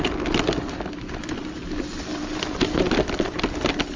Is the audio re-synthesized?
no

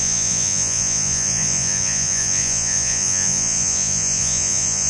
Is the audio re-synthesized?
yes